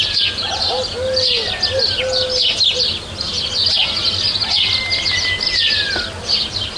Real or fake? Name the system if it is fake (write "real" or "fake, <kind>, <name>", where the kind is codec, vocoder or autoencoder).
real